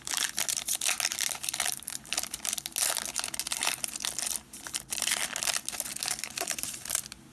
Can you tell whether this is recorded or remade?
recorded